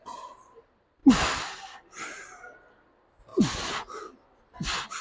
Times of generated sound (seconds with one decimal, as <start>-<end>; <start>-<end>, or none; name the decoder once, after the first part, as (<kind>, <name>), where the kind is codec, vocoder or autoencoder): none